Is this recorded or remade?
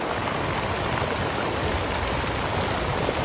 recorded